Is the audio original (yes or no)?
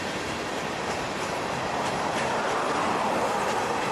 no